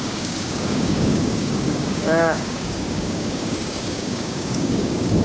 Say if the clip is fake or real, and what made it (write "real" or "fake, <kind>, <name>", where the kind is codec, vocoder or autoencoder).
fake, codec, DAC